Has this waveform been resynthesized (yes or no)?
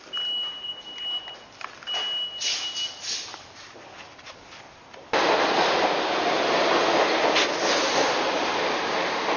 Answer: no